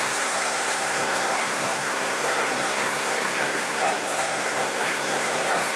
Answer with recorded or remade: remade